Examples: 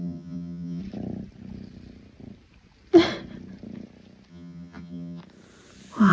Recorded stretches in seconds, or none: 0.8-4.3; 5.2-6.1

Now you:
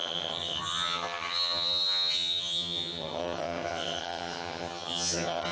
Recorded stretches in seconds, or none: none